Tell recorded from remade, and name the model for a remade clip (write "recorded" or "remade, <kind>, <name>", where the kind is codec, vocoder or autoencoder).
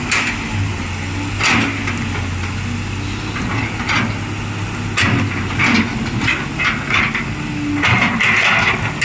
recorded